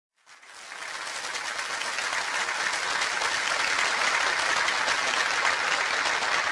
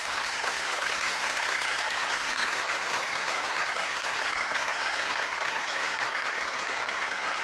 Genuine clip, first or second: first